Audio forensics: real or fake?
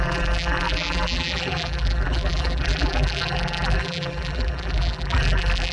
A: fake